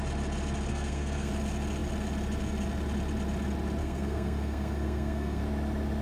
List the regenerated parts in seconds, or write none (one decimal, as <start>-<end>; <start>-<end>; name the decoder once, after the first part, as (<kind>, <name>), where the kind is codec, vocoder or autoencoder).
0.7-1.3 (codec, SNAC); 3.8-5.4